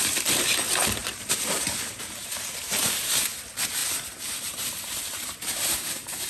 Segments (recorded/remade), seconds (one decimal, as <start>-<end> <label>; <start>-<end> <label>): 0.0-1.0 recorded; 1.0-3.3 remade; 3.3-3.8 recorded; 3.8-6.3 remade

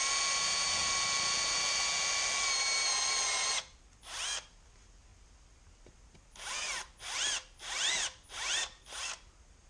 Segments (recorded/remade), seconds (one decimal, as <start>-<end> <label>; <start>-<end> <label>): 0.0-9.7 recorded

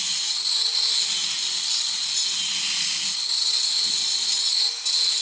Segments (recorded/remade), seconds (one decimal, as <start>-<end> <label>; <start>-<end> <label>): 0.0-5.2 recorded

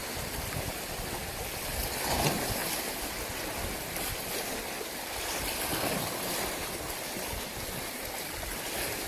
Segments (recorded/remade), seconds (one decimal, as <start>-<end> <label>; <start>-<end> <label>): 0.0-9.1 recorded

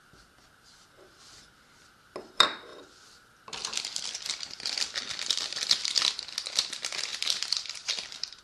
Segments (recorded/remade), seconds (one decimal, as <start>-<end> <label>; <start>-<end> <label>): 0.0-2.7 recorded; 2.7-6.1 remade; 6.1-7.1 recorded; 7.1-8.4 remade